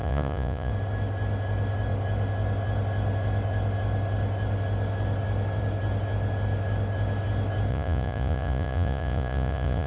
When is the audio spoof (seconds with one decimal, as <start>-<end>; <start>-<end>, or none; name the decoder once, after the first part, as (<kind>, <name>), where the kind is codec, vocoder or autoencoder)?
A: 0.0-0.7 (vocoder, Vocos); 7.7-9.9